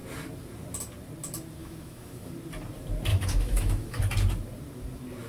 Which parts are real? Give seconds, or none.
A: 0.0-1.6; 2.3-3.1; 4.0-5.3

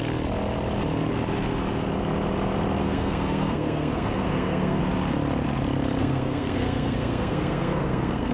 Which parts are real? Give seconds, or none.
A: 0.0-2.8; 4.8-6.0

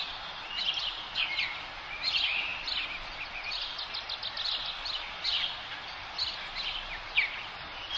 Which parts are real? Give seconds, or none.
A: 0.0-8.0

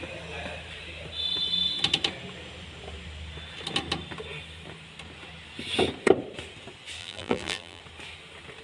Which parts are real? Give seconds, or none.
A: 0.0-7.0; 7.8-8.6

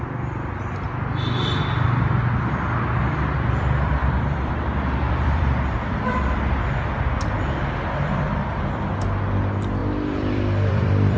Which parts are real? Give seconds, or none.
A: 0.0-3.0; 6.6-9.8

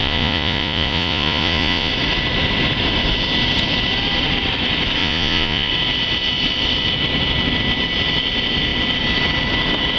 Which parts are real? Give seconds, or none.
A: 1.9-5.0; 5.7-10.0

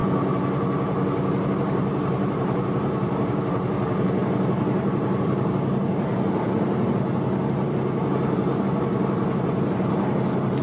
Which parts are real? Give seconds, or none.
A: 0.0-1.5; 6.1-6.9

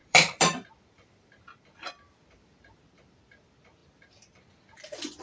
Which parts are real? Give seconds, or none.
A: none